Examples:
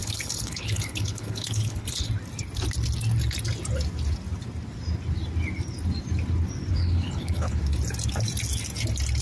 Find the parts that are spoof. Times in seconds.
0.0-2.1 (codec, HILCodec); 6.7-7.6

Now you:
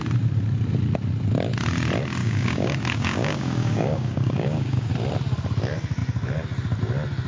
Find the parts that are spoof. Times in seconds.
2.2-4.9 (codec, DAC)